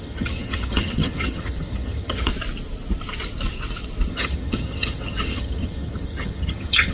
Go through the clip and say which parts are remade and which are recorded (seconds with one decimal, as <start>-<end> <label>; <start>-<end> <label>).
0.0-2.3 remade; 2.3-4.1 recorded; 4.1-6.9 remade